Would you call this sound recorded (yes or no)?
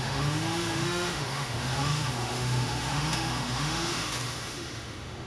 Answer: no